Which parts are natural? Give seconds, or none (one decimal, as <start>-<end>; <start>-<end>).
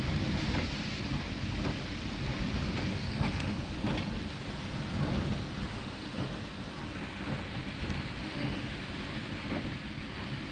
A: 0.0-2.9; 3.6-5.6; 6.3-8.2; 8.8-10.5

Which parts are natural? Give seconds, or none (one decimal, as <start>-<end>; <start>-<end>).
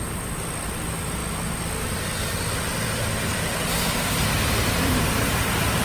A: 1.2-4.7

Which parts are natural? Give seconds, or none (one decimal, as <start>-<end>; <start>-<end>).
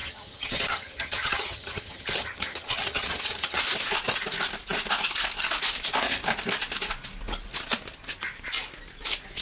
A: 3.6-9.4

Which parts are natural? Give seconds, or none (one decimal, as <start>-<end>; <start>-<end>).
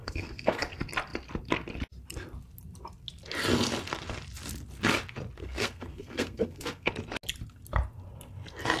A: 0.6-5.4; 6.9-8.8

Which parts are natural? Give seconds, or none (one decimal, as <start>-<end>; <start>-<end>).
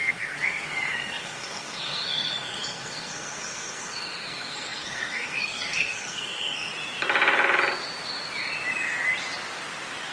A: 6.7-10.1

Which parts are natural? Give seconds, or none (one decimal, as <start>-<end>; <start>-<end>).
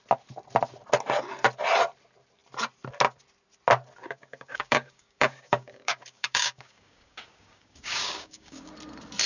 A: 0.0-4.0; 8.7-9.3